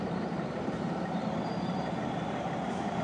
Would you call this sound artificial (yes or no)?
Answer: yes